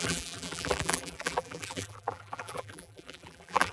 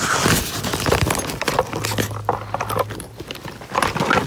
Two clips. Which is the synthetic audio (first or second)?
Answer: first